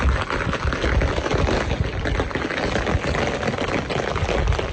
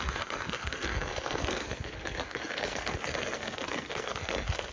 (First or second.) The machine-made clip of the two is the second